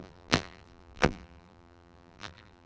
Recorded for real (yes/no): no